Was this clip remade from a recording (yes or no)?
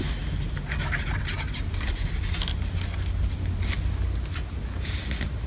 no